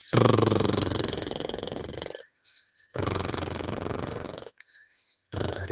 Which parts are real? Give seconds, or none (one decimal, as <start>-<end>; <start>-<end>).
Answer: 1.8-2.2